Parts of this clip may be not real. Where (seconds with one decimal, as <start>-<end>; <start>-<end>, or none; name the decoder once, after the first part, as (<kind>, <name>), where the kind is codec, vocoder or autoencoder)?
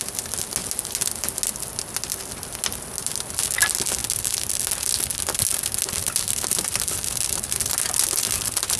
none